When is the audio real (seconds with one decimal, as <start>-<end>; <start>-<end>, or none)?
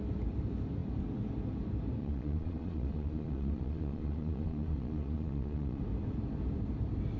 0.0-2.0; 5.8-7.2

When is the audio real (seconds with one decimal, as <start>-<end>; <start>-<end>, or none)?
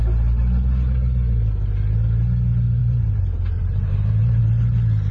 0.0-2.8; 4.4-5.1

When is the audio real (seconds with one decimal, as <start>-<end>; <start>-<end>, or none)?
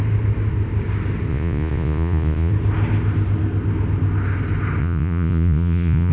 0.0-1.3; 2.5-4.8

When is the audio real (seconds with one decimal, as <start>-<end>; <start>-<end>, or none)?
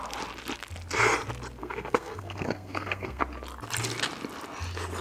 0.0-1.6; 3.2-5.0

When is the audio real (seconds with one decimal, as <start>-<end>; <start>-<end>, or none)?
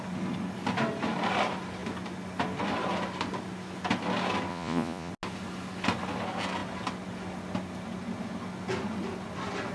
0.0-4.5; 5.1-9.7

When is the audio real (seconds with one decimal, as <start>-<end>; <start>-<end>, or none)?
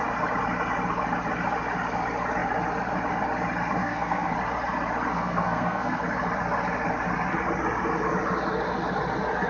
0.0-3.8; 4.3-5.1; 6.0-9.5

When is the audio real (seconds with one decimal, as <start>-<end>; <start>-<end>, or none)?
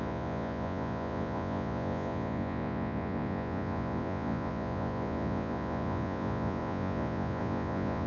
none